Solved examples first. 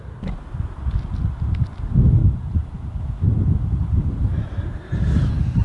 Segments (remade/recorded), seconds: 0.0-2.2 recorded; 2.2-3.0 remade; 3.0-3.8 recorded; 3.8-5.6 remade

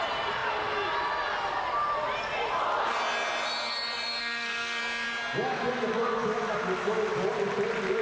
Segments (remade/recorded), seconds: 0.0-4.2 recorded; 4.2-4.8 remade; 4.8-8.0 recorded